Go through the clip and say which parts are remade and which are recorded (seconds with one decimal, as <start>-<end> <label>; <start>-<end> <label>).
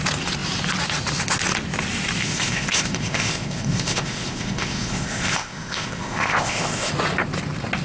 0.0-2.2 recorded; 2.2-6.9 remade; 6.9-7.8 recorded